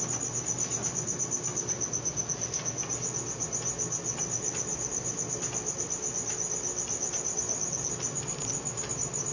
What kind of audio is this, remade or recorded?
recorded